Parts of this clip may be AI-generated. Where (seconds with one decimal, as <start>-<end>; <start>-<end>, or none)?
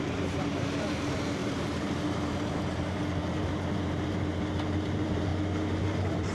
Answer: 0.0-5.3; 5.8-6.3